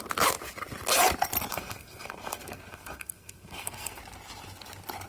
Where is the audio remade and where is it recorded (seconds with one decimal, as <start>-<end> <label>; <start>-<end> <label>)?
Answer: 0.0-1.5 recorded; 1.5-4.0 remade; 4.0-5.1 recorded